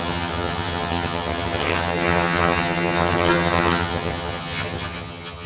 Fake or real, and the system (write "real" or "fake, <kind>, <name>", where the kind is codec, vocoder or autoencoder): fake, vocoder, HiFi-GAN